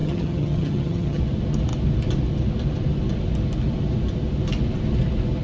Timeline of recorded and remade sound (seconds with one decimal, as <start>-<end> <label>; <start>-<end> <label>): 0.0-1.2 remade; 1.2-5.4 recorded